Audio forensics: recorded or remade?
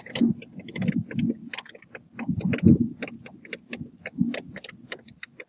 recorded